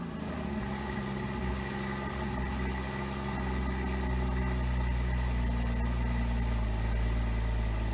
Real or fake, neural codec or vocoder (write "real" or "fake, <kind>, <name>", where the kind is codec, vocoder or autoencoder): real